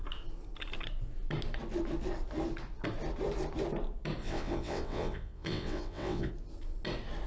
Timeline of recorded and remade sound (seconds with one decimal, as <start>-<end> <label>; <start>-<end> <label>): 0.0-4.2 recorded; 4.2-6.3 remade; 6.3-7.3 recorded